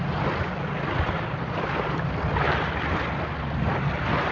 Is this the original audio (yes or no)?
yes